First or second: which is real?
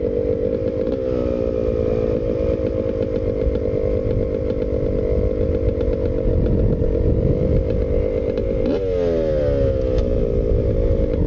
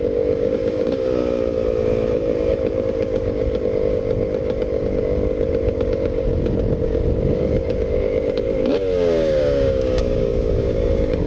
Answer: first